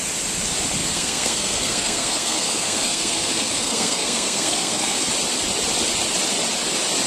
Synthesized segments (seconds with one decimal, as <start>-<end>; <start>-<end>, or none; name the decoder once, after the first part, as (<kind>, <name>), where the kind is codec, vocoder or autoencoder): 0.8-5.1 (codec, SNAC)

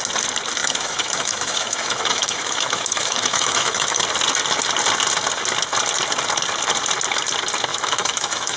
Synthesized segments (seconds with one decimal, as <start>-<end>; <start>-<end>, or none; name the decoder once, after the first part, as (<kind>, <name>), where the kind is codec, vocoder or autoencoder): 0.6-4.0 (autoencoder, DAC-VAE); 7.7-8.6

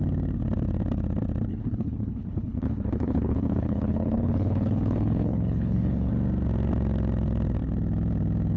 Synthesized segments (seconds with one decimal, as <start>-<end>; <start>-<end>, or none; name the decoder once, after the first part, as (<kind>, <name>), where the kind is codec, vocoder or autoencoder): 1.5-6.1 (codec, HILCodec)

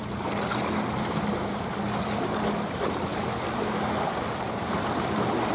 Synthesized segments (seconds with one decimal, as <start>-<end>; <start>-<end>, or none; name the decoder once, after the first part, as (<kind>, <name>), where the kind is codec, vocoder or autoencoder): none